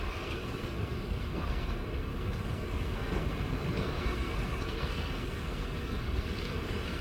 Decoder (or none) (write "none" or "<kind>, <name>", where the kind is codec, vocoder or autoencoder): codec, SNAC